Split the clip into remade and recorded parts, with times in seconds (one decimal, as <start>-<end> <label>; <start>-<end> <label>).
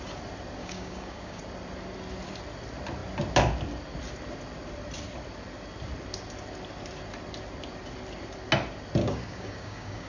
0.0-0.6 recorded; 0.6-1.4 remade; 1.4-9.0 recorded; 9.0-10.1 remade